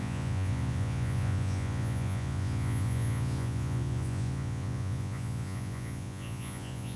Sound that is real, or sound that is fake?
fake